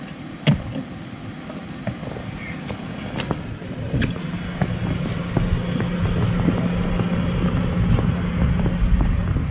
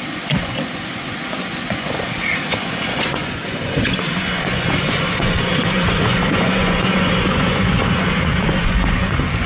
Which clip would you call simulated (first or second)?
second